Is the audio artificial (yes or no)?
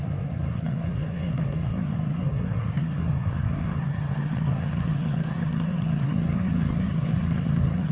yes